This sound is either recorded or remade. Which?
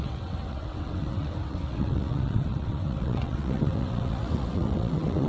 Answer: remade